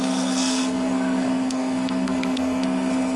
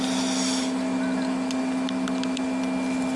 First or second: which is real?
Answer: second